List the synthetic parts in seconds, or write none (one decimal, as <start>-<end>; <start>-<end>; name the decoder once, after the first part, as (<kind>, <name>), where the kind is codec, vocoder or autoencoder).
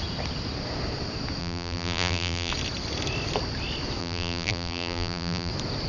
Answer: 1.4-2.5 (vocoder, BigVGAN v2); 4.0-5.5